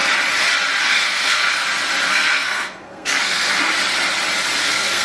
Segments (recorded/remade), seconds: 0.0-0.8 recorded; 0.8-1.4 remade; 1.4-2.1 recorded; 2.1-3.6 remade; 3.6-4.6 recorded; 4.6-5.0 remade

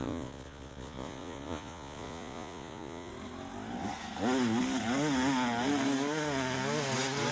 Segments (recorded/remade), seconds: 0.0-3.1 remade; 3.1-7.3 recorded

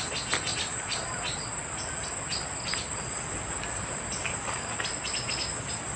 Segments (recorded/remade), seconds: 0.0-6.0 recorded